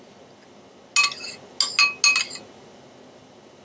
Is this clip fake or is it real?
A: real